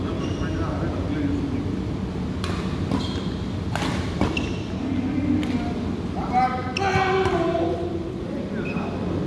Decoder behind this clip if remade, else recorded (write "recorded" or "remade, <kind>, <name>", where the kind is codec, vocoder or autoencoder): recorded